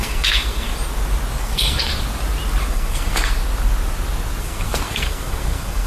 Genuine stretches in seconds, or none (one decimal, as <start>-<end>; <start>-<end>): 0.7-1.4; 1.9-2.7; 3.4-4.4